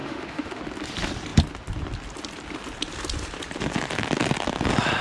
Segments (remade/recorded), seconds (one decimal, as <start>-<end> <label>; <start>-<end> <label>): 0.0-0.6 remade; 0.6-5.0 recorded